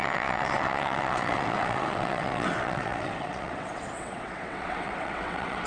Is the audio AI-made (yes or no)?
yes